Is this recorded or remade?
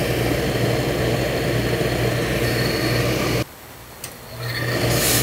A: recorded